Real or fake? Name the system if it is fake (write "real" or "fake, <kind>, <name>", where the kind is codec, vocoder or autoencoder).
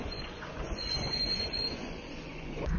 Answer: fake, vocoder, Vocos